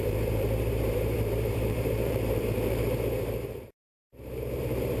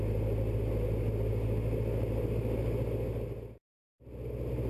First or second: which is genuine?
second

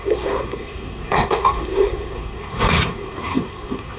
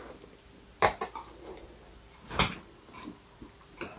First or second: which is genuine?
second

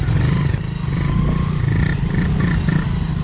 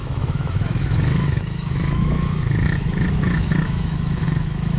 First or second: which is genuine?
first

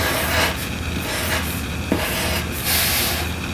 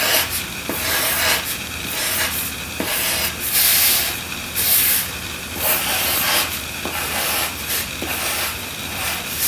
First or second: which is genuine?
first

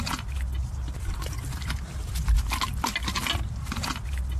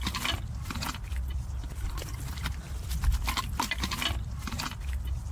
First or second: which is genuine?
first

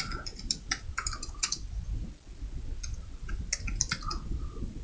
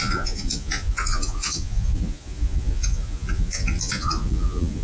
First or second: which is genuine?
first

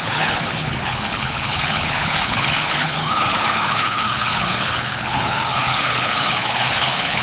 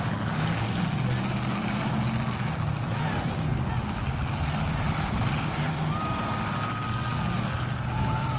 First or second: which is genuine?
second